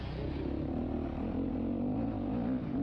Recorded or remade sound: recorded